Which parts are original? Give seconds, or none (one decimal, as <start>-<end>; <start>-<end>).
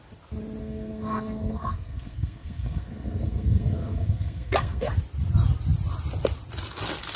0.0-0.6; 4.9-7.2